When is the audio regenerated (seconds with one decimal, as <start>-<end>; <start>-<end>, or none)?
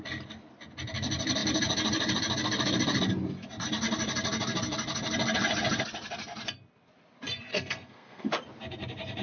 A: 7.5-8.3